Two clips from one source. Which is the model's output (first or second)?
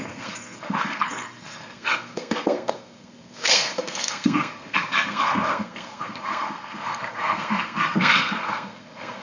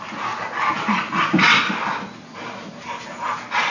first